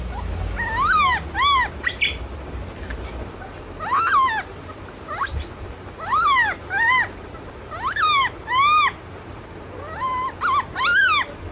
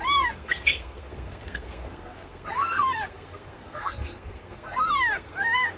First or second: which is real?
first